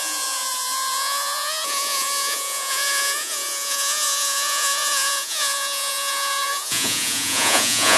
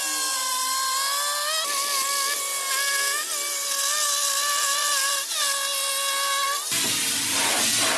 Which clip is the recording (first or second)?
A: second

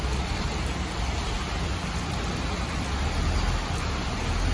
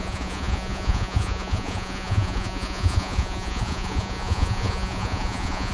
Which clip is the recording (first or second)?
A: first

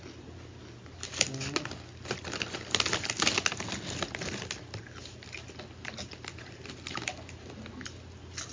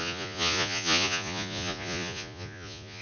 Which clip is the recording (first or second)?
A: first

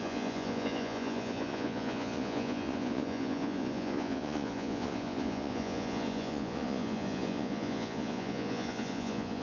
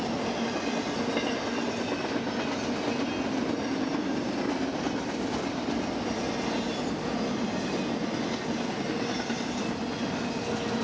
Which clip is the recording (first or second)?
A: second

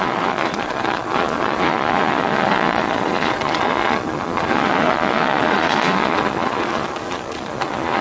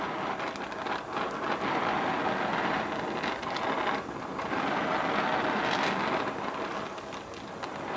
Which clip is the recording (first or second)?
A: second